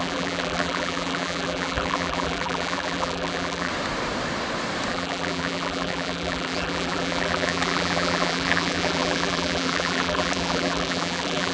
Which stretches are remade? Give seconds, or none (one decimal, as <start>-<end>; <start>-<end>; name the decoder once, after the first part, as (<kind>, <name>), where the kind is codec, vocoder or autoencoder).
0.0-3.7 (vocoder, BigVGAN v2); 4.9-11.5